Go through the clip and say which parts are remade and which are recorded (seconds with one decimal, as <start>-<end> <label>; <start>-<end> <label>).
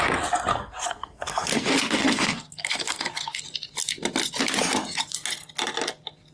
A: 0.0-0.5 recorded; 0.5-3.4 remade; 3.4-6.3 recorded